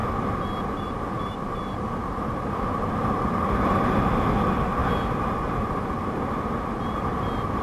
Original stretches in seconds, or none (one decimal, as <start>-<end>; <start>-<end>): 0.0-7.6